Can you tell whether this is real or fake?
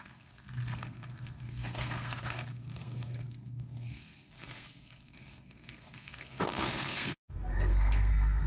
fake